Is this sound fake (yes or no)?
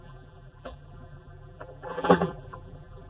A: yes